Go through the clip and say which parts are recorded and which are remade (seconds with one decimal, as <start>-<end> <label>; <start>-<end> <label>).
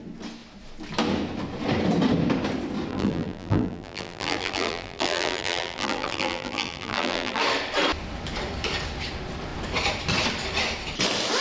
0.0-2.9 recorded; 2.9-7.4 remade; 7.4-11.4 recorded